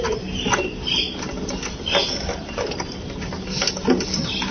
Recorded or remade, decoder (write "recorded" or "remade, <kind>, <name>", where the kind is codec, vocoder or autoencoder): recorded